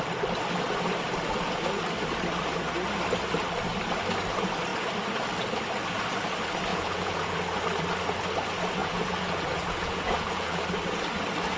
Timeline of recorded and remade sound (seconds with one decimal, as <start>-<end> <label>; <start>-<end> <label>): 0.0-6.7 recorded; 6.7-7.4 remade; 7.4-8.8 recorded; 8.8-10.6 remade; 10.6-11.6 recorded